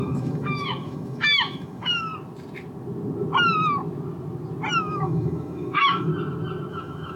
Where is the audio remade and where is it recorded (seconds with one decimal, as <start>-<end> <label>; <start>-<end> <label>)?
0.0-2.1 remade; 2.1-4.8 recorded; 4.8-6.1 remade; 6.1-6.7 recorded; 6.7-7.2 remade

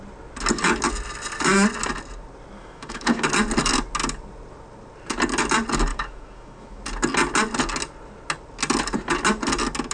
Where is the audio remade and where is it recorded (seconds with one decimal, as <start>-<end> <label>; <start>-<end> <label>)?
0.0-2.6 recorded; 2.6-3.2 remade; 3.2-5.9 recorded; 5.9-6.8 remade; 6.8-9.9 recorded

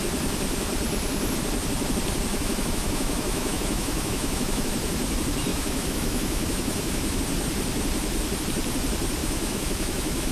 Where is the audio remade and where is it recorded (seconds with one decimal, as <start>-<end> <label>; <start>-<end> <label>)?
0.0-2.3 recorded; 2.3-4.7 remade; 4.7-5.5 recorded; 5.5-7.2 remade; 7.2-9.2 recorded; 9.2-10.3 remade

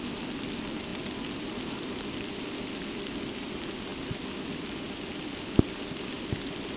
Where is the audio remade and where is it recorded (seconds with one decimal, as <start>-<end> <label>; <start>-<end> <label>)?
0.0-6.8 recorded

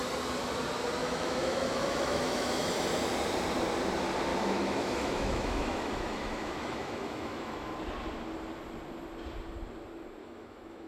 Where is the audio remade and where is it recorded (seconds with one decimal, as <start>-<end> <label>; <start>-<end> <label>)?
0.0-1.0 recorded; 1.0-2.7 remade; 2.7-4.3 recorded; 4.3-7.7 remade; 7.7-10.2 recorded; 10.2-10.9 remade